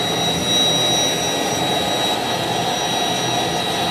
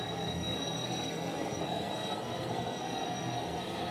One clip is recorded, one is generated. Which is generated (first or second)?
second